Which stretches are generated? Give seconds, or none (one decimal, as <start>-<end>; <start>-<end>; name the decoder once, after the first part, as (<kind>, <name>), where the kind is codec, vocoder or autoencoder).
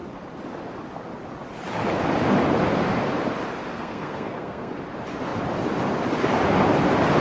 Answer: 3.7-4.7 (codec, SNAC)